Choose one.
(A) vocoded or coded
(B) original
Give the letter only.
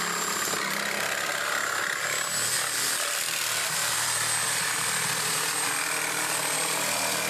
B